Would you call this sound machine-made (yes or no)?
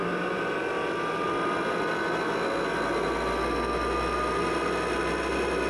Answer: no